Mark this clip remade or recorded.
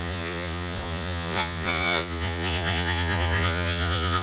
remade